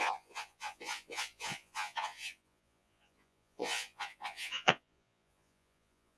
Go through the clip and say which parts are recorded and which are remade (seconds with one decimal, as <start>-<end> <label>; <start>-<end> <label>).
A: 0.0-6.2 remade